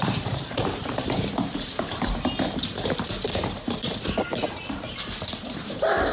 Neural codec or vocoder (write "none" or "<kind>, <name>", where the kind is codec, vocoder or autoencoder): vocoder, BigVGAN v2